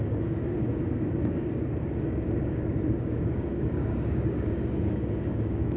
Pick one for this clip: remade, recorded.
remade